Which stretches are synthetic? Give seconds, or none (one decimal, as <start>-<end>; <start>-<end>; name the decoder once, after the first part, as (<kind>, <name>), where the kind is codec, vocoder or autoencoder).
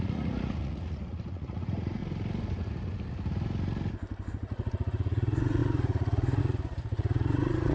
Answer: 0.0-2.0 (vocoder, Vocos); 4.3-7.7